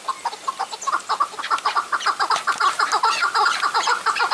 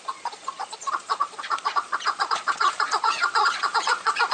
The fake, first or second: second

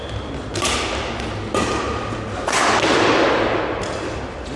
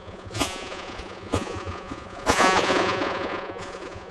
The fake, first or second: second